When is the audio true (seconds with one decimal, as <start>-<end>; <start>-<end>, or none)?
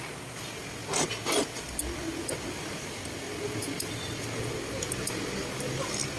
0.0-6.2